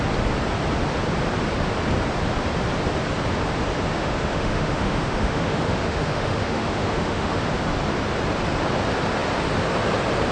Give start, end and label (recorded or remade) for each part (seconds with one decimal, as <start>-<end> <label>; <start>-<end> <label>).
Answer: 0.0-3.9 recorded; 3.9-7.4 remade; 7.4-10.3 recorded